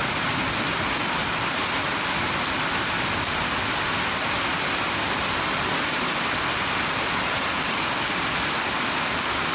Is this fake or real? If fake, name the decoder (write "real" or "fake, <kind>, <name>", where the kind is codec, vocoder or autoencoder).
real